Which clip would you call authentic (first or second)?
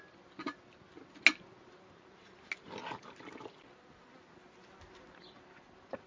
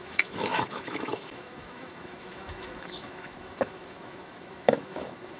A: first